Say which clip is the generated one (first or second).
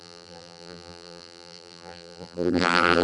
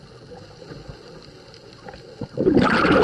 first